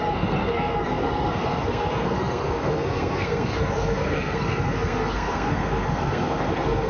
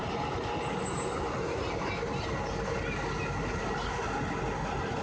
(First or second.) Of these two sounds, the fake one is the first